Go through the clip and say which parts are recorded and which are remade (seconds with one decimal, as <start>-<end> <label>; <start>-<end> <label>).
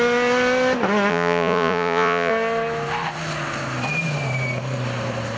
0.0-1.1 recorded; 1.1-2.3 remade; 2.3-5.4 recorded